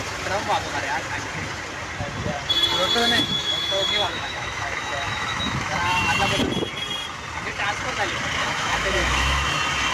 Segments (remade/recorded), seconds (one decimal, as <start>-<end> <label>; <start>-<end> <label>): 0.0-3.0 recorded; 3.0-6.2 remade; 6.2-8.4 recorded; 8.4-9.5 remade; 9.5-9.9 recorded